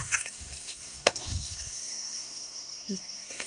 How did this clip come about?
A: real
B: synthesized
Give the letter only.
B